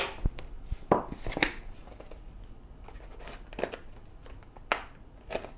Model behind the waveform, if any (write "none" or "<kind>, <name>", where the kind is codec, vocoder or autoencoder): none